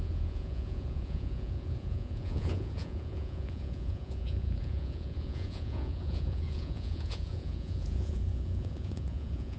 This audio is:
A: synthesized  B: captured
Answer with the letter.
A